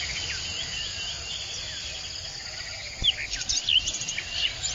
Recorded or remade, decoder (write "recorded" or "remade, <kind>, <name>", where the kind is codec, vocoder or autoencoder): recorded